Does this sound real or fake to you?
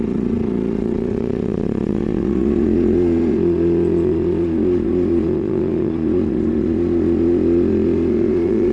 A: fake